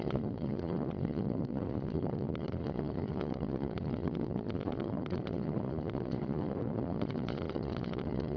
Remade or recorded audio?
remade